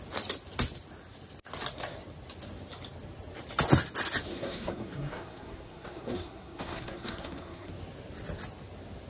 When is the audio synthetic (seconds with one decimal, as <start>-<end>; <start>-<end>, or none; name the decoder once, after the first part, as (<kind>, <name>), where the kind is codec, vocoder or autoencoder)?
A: 4.3-7.7 (codec, SNAC)